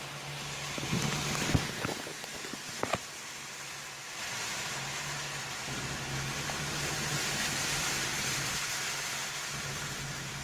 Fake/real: real